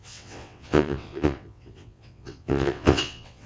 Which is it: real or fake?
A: fake